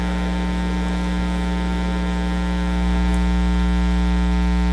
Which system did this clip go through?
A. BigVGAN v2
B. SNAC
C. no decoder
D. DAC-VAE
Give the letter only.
C